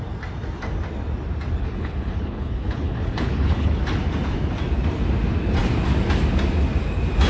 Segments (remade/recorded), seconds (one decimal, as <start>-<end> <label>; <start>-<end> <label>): 0.0-1.6 recorded; 1.6-3.8 remade; 3.8-7.3 recorded